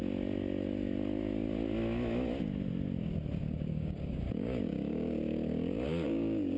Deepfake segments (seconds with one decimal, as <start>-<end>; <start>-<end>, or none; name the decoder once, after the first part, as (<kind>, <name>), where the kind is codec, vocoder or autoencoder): 3.4-6.6 (codec, DAC)